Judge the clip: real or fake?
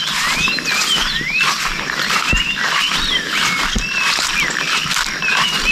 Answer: real